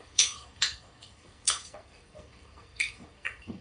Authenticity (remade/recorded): remade